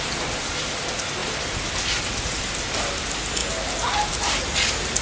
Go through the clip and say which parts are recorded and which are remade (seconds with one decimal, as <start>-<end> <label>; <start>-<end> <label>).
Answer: 0.0-5.0 recorded